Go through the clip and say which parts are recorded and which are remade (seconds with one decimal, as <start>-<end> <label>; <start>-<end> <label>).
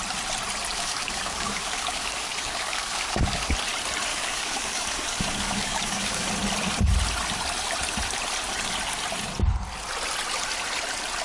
0.0-0.7 recorded; 0.7-3.5 remade; 3.5-4.1 recorded; 4.1-6.3 remade; 6.3-11.2 recorded